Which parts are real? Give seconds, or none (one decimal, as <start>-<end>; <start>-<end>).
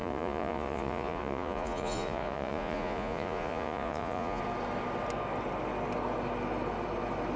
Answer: 4.4-7.4